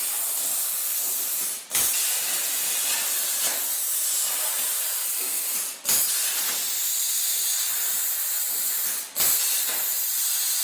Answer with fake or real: real